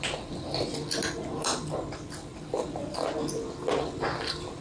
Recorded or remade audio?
recorded